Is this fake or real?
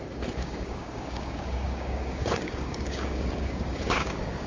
fake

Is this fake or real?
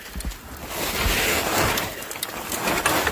real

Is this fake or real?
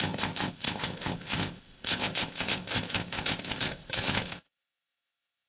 fake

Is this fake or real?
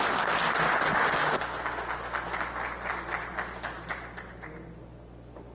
real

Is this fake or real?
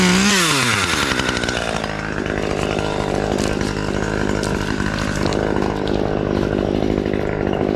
real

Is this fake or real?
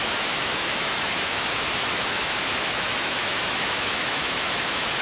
fake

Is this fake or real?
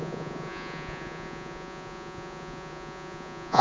fake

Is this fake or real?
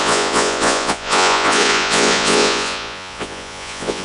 fake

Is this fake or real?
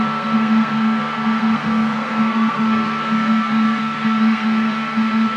fake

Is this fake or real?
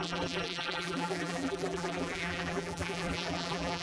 fake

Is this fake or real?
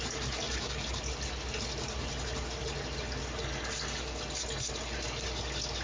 real